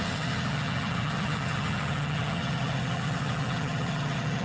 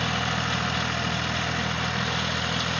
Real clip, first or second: second